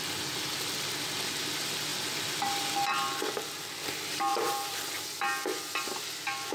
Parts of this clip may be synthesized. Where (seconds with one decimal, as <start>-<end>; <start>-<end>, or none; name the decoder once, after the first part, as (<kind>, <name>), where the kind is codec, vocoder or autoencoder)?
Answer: 4.3-4.9 (vocoder, BigVGAN v2)